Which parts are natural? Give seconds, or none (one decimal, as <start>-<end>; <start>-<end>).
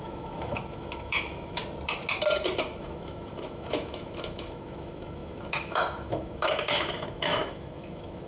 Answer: 1.6-2.8